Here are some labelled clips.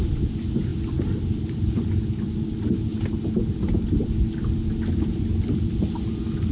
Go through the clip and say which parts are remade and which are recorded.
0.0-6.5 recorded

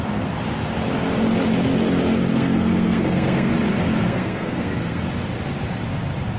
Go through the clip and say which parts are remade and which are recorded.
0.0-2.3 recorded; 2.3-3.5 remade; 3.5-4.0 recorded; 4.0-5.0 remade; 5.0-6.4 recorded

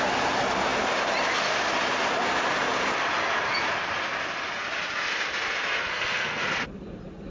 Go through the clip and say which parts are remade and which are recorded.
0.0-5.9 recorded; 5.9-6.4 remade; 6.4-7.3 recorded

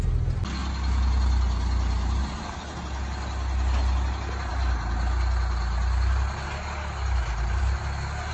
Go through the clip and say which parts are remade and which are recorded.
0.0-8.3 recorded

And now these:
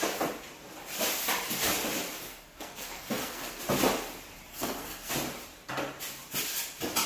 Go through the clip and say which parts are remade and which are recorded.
0.0-2.3 recorded; 2.3-3.6 remade; 3.6-4.5 recorded; 4.5-5.1 remade; 5.1-7.1 recorded